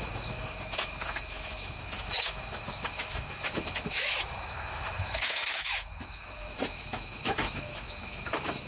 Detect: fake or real fake